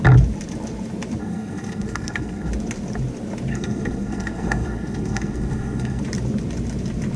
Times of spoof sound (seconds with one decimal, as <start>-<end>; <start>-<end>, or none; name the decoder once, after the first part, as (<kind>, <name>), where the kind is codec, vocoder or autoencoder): 1.2-2.5 (codec, SNAC); 3.5-6.0